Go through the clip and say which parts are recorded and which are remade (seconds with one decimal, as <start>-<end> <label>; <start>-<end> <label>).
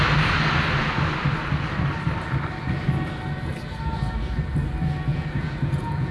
0.0-5.1 recorded; 5.1-6.1 remade